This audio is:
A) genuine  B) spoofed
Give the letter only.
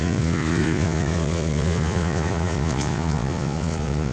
B